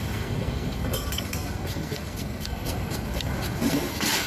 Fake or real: fake